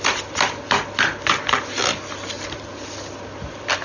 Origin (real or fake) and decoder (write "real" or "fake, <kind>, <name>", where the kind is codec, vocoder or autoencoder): real